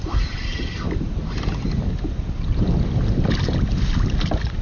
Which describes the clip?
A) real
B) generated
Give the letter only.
A